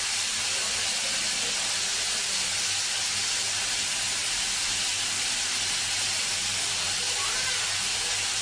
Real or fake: real